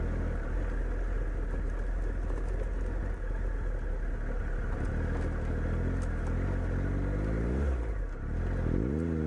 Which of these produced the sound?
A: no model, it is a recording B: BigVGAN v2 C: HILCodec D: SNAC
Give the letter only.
A